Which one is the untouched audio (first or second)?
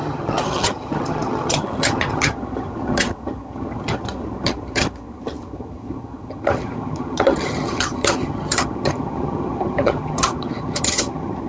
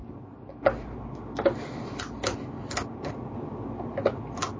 second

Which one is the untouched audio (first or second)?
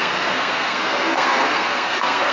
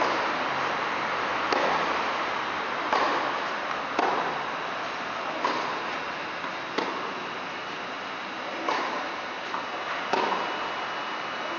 second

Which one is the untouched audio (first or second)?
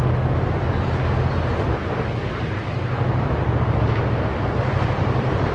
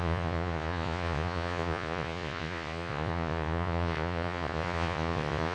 first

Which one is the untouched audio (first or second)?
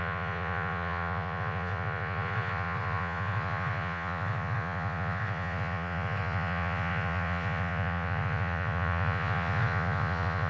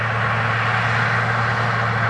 second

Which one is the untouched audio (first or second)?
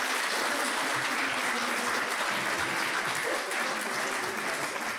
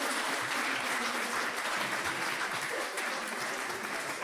first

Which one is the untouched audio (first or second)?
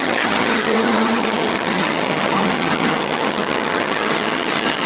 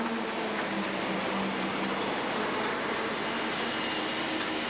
second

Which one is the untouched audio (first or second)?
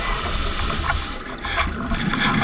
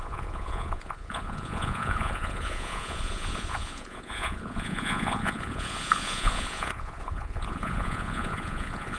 first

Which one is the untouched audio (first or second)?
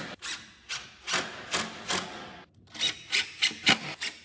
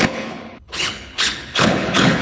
first